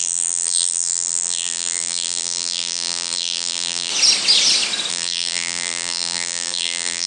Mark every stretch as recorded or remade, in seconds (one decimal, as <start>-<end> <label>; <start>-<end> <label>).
0.0-3.9 remade; 3.9-4.9 recorded; 4.9-7.1 remade